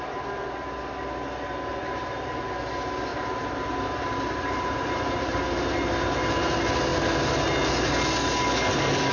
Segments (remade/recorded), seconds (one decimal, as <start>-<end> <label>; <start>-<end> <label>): 0.0-1.7 recorded; 1.7-2.2 remade; 2.2-3.1 recorded; 3.1-5.4 remade; 5.4-9.1 recorded